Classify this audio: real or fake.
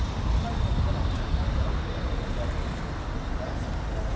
real